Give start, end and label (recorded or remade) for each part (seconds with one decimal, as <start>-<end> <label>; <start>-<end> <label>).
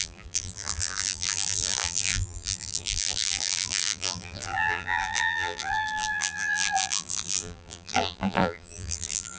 0.0-9.4 remade